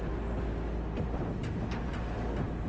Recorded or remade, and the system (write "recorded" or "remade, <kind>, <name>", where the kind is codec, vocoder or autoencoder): recorded